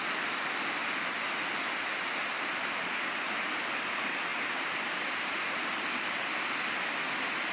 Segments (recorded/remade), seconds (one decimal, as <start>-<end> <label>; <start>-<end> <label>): 0.0-4.3 recorded; 4.3-6.3 remade; 6.3-7.5 recorded